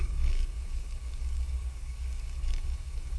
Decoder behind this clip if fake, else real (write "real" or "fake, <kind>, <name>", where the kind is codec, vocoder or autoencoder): fake, codec, DAC